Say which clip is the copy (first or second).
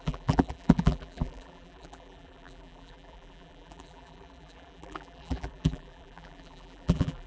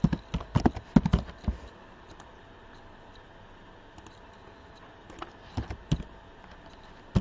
first